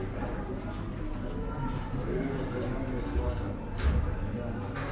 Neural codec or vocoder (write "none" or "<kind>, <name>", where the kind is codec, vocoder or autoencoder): none